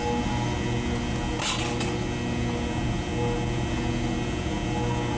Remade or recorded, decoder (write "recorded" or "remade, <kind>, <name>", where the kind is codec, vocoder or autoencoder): recorded